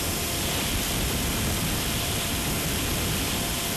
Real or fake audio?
fake